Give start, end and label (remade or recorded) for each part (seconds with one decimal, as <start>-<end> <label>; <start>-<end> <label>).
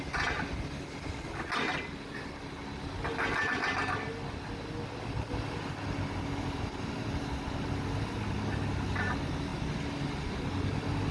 0.0-11.1 recorded